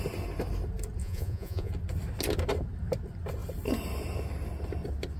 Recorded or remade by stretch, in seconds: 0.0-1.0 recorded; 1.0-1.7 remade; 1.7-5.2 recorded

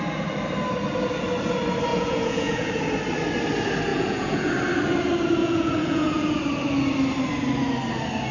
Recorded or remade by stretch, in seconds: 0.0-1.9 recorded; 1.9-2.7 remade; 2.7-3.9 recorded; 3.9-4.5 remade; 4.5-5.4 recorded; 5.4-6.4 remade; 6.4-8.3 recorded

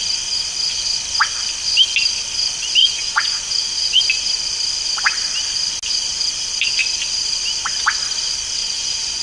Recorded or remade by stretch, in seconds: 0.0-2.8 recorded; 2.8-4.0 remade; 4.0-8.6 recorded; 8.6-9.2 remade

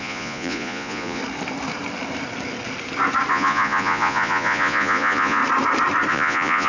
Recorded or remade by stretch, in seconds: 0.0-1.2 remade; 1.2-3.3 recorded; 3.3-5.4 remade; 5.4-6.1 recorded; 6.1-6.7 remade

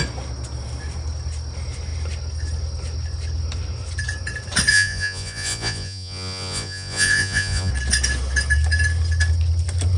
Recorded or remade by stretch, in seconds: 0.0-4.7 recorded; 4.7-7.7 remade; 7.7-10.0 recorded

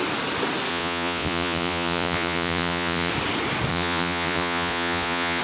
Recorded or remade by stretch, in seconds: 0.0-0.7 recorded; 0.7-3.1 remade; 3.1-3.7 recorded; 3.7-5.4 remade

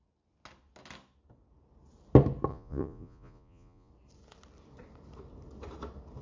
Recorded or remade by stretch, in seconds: 0.0-2.5 recorded; 2.5-3.9 remade; 3.9-6.2 recorded

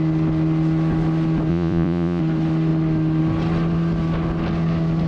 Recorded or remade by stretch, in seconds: 0.0-1.5 recorded; 1.5-2.2 remade; 2.2-5.1 recorded